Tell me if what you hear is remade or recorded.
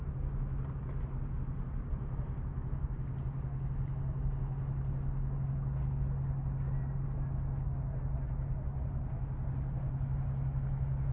recorded